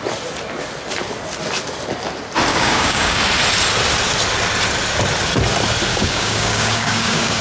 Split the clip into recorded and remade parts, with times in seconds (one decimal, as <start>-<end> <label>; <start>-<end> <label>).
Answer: 0.0-2.5 recorded; 2.5-3.2 remade; 3.2-5.9 recorded; 5.9-7.4 remade